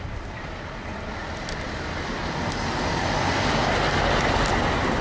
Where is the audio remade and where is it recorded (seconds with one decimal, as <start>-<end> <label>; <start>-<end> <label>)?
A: 0.0-5.0 recorded